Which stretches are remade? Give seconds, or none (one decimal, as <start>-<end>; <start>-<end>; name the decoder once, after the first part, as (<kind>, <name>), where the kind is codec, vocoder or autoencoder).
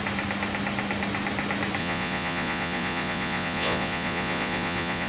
1.8-5.1 (vocoder, Vocos)